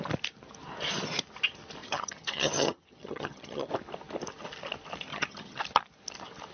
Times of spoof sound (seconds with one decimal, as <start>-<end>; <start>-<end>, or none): 1.8-3.7; 5.1-5.6